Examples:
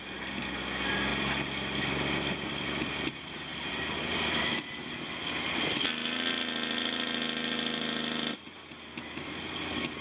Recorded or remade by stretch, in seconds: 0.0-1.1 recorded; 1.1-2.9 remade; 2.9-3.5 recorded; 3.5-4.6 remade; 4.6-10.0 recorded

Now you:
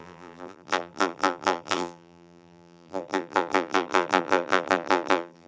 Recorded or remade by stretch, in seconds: 0.0-5.5 remade